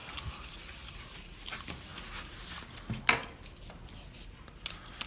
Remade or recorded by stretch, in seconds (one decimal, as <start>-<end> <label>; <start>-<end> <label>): 0.0-5.1 recorded